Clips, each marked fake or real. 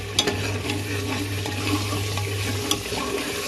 real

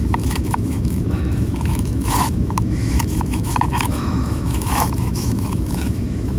fake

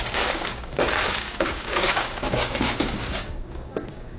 fake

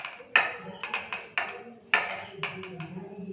real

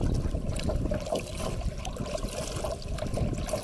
real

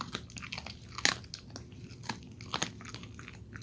real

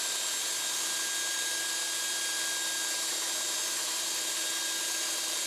real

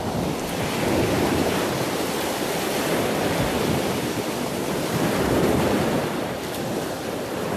fake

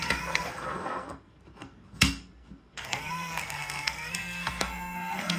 fake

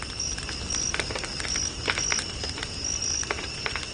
real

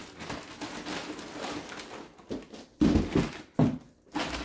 real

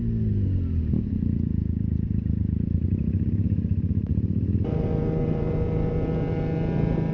real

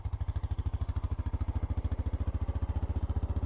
real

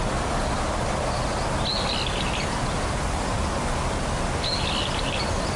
real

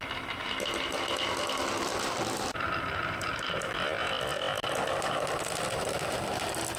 real